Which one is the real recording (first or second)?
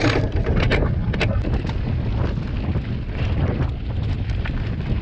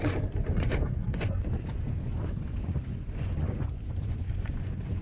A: first